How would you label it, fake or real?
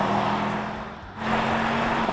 real